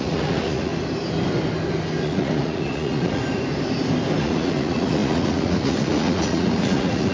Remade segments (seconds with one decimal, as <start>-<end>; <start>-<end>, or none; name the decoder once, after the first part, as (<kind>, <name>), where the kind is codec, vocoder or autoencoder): 0.0-0.7 (vocoder, Vocos); 2.0-3.2; 4.2-7.1